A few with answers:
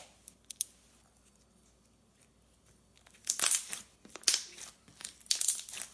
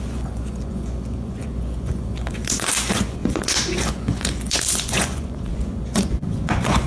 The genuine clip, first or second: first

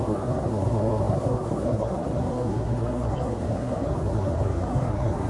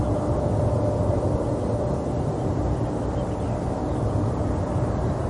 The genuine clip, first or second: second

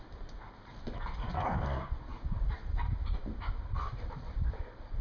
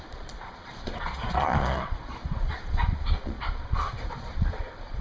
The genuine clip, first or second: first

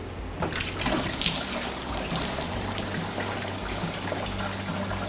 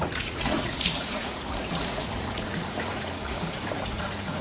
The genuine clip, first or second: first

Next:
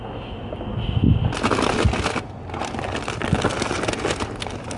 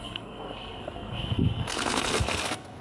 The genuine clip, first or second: first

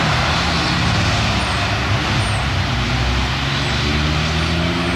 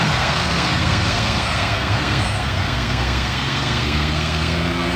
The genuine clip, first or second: first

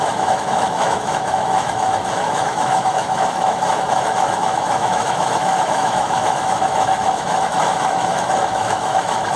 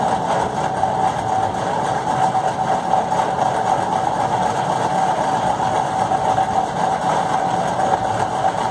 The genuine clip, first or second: second